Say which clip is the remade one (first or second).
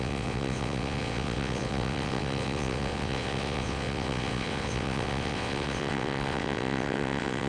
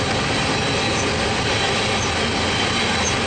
first